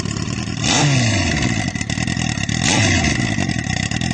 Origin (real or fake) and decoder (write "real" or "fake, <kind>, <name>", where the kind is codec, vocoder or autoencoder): real